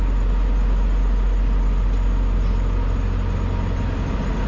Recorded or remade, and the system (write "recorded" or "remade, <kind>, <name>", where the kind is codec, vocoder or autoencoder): recorded